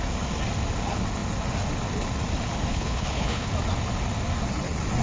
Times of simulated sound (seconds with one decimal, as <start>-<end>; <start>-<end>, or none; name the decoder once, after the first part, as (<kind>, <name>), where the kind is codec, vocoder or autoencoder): 2.7-3.5 (codec, HILCodec)